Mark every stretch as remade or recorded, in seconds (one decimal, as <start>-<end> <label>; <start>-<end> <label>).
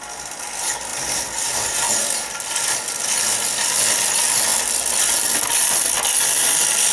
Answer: 0.0-6.9 recorded